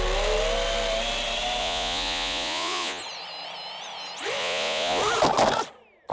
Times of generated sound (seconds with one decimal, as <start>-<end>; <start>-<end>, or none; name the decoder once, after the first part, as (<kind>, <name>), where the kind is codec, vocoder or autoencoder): 1.6-3.0 (vocoder, Vocos); 4.4-5.0